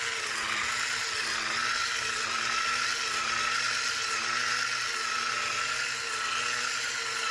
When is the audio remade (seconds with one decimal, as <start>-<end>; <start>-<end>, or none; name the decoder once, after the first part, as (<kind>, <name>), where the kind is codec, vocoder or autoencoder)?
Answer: none